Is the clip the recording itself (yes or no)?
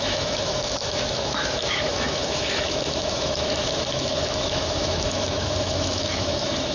no